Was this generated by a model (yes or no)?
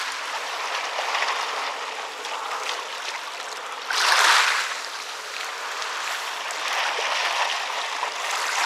no